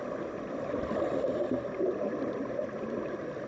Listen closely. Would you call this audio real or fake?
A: real